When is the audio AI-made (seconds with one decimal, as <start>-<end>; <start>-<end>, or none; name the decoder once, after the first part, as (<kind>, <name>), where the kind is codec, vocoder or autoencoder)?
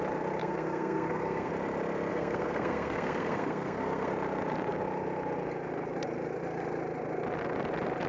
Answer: 0.4-1.5 (codec, SNAC); 2.1-4.1